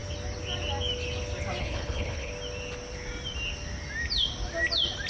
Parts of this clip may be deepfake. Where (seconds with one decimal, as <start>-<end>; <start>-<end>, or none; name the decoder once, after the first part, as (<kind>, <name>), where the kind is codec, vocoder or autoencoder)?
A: 1.6-2.3 (codec, HILCodec)